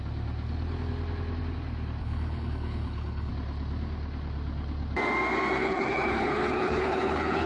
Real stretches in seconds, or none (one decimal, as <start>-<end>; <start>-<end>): 0.0-2.0; 3.3-5.6